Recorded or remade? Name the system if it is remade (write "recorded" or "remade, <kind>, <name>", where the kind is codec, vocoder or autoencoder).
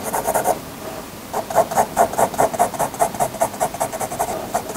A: recorded